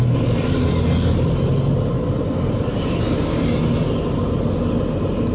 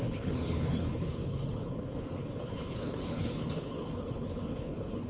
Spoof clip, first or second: second